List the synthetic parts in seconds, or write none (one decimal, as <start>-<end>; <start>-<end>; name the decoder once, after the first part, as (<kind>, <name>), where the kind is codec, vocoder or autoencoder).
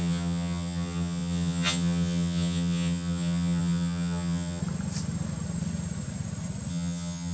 0.0-4.6 (vocoder, HiFi-GAN); 6.7-7.3